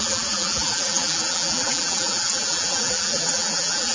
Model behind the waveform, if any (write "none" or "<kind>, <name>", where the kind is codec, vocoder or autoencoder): vocoder, BigVGAN v2